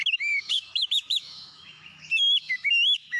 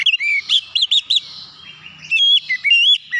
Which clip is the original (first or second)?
second